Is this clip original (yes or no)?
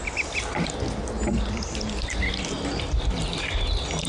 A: yes